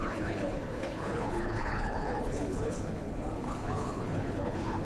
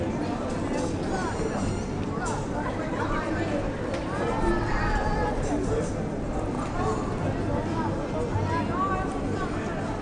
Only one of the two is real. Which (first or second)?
second